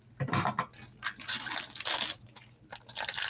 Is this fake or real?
real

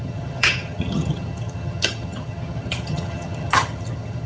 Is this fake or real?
fake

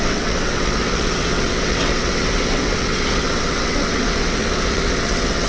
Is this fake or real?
fake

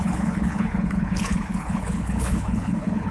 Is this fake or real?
fake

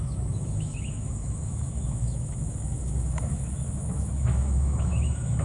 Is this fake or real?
fake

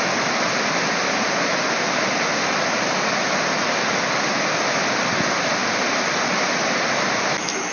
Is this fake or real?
real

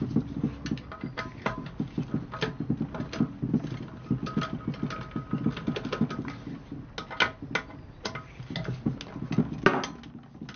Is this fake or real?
real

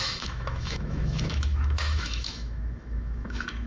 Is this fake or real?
fake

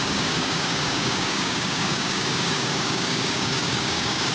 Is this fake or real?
fake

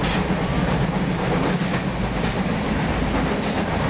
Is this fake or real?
real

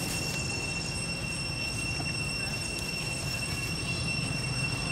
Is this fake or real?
real